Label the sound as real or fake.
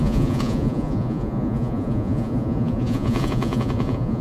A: fake